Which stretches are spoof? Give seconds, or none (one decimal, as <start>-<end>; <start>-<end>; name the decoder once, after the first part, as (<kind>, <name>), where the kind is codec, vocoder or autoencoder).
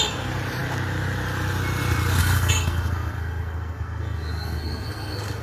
2.2-5.4 (codec, SNAC)